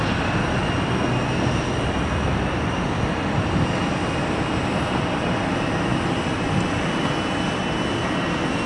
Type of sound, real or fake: real